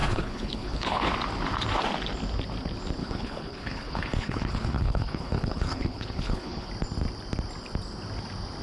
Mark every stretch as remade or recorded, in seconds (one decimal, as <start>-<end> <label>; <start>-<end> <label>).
0.0-1.1 remade; 1.1-3.0 recorded; 3.0-6.7 remade; 6.7-8.6 recorded